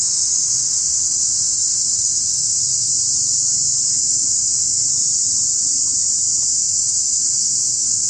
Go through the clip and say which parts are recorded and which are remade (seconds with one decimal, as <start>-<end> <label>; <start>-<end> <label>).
0.0-2.9 remade; 2.9-3.9 recorded; 3.9-4.8 remade; 4.8-6.5 recorded; 6.5-8.1 remade